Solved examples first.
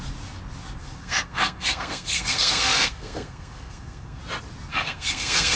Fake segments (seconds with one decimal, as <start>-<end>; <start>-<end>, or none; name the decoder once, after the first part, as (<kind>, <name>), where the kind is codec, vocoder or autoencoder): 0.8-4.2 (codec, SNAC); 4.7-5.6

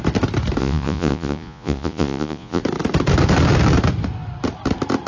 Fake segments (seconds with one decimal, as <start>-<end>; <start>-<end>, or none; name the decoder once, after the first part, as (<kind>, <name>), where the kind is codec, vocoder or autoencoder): 0.6-2.6 (vocoder, Vocos)

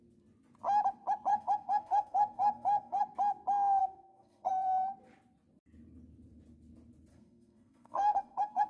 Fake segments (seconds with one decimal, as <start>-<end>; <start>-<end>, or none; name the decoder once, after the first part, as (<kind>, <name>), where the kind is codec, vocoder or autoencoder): 1.3-3.0 (codec, SNAC); 3.8-4.5; 7.1-8.7

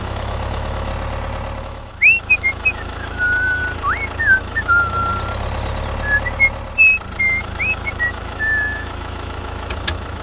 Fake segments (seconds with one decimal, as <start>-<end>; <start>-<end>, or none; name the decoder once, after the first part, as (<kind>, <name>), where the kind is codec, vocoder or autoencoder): 0.0-0.9 (autoencoder, DAC-VAE); 1.6-3.6; 4.2-5.1; 7.2-10.2